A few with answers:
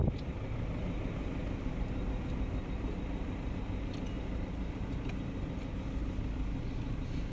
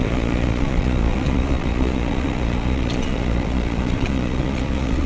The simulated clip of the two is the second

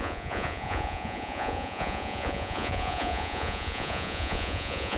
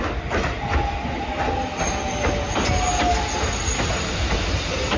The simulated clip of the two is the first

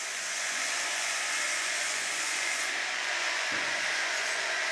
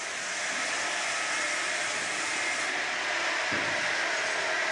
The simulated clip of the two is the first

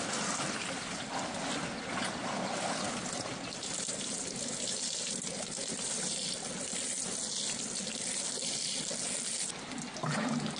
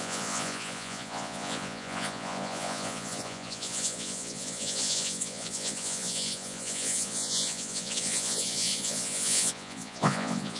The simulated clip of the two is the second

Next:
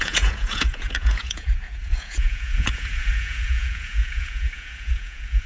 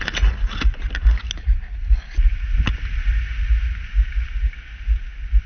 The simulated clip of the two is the first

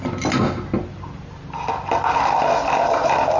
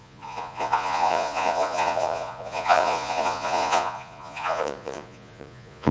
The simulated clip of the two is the second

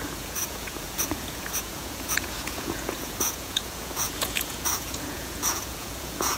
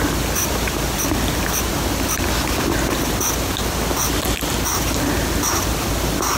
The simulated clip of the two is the first